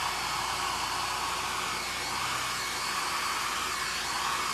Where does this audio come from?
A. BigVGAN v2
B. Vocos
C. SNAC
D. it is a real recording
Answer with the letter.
D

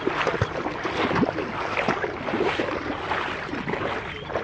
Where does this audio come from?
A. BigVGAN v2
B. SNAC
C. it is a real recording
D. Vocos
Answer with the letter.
C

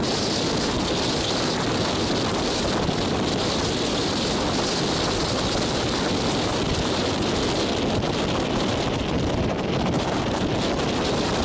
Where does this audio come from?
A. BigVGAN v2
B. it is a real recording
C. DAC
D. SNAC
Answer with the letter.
B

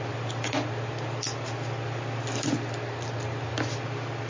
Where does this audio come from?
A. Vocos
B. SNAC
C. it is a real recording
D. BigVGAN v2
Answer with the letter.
C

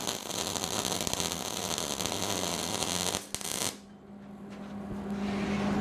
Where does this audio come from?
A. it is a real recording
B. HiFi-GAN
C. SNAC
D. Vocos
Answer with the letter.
A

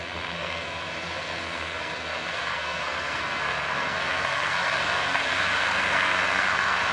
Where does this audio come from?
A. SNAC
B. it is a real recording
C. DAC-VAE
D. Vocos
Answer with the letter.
A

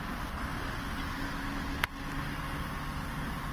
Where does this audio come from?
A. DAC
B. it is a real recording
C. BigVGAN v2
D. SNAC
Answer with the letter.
B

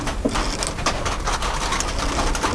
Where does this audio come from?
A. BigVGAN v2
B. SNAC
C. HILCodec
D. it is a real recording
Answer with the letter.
D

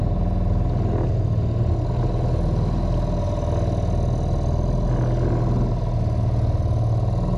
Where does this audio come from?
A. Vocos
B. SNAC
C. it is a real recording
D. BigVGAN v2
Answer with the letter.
C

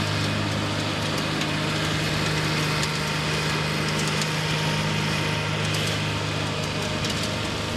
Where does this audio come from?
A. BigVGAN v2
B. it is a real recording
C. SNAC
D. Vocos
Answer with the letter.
B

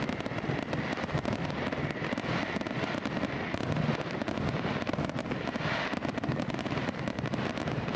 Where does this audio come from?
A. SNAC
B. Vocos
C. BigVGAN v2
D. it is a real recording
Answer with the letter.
D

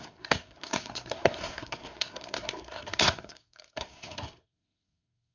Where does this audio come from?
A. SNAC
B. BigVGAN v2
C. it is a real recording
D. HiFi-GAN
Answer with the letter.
A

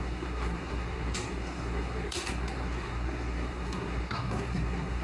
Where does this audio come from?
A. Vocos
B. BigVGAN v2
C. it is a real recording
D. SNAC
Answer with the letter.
D